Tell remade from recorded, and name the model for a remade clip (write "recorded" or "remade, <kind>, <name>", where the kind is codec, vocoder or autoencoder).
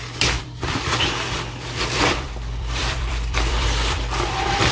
remade, vocoder, BigVGAN v2